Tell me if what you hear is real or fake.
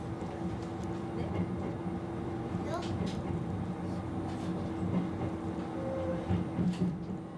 real